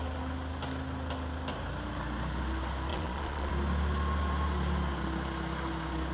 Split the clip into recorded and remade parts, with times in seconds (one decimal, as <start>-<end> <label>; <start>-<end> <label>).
0.0-2.9 recorded; 2.9-3.5 remade; 3.5-6.1 recorded